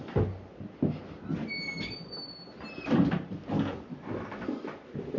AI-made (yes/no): no